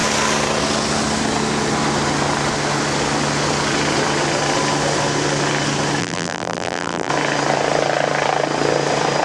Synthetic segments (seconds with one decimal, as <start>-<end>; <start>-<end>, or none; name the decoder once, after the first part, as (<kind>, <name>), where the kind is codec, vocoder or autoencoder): 6.0-7.1 (vocoder, BigVGAN v2)